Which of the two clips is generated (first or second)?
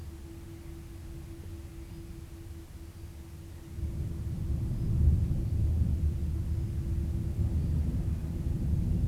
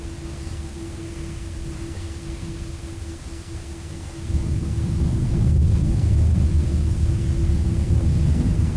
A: second